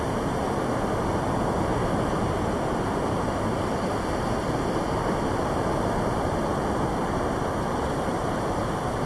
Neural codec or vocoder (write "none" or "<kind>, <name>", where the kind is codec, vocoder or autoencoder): none